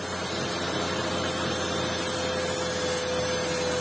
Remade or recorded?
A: recorded